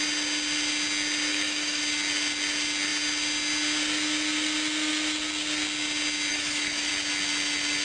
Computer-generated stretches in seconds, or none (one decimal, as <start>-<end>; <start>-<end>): 1.3-1.8; 6.3-6.9